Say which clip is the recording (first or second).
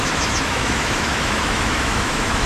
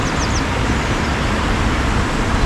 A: second